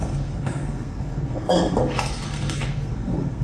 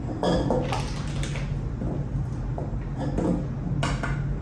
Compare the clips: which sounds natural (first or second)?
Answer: second